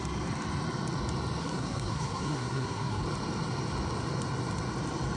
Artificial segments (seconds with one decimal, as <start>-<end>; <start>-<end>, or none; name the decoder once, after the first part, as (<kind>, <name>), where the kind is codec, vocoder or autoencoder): 1.4-3.0 (codec, SNAC)